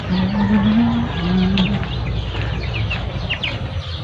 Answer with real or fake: real